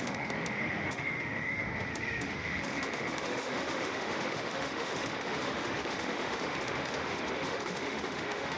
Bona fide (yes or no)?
no